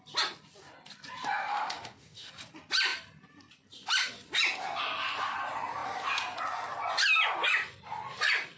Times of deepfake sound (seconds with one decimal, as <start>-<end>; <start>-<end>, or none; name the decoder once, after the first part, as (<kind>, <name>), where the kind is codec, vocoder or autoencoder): 1.5-2.3 (autoencoder, DAC-VAE)